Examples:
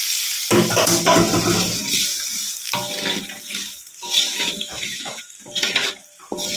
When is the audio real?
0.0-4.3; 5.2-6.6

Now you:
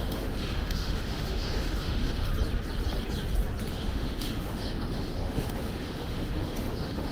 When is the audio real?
2.3-3.7

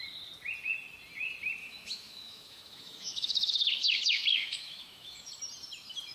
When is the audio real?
0.0-1.6; 5.3-6.1

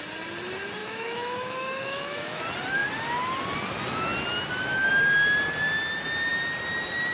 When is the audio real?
0.0-0.8; 2.4-7.1

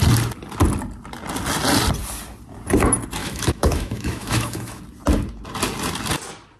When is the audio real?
0.0-3.2; 4.8-6.6

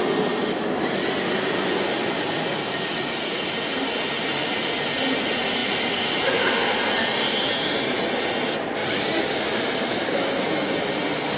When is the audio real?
0.0-11.4

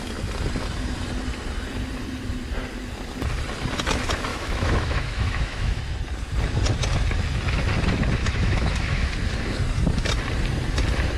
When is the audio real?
0.0-4.3; 5.8-8.2; 9.1-11.2